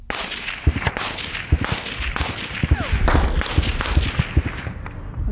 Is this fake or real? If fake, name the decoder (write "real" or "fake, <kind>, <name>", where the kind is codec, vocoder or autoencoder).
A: real